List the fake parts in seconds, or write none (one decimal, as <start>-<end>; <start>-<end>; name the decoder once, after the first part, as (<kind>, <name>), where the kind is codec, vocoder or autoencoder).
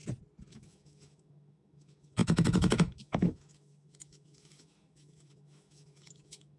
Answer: 0.5-6.6 (autoencoder, DAC-VAE)